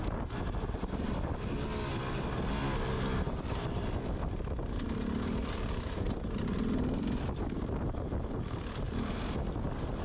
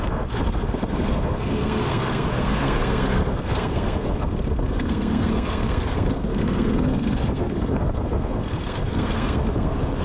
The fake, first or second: second